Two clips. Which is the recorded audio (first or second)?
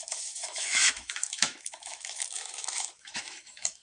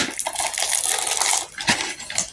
second